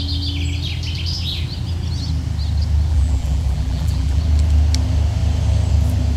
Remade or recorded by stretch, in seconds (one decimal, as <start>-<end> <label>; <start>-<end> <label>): 0.0-2.9 recorded; 2.9-4.2 remade; 4.2-6.2 recorded